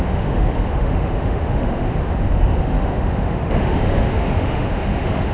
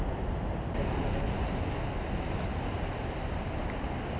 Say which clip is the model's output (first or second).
first